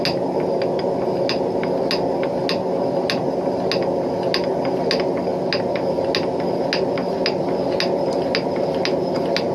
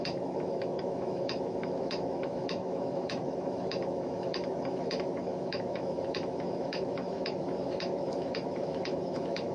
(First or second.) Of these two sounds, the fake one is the second